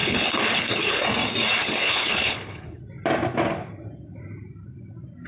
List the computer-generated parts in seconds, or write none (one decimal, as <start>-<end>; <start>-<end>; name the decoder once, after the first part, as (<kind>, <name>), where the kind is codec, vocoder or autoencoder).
0.0-1.0 (codec, HILCodec); 1.6-2.8